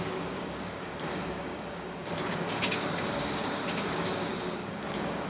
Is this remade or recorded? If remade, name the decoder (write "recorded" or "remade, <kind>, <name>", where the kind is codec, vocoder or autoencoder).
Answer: remade, codec, DAC